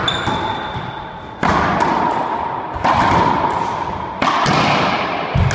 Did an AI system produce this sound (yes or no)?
no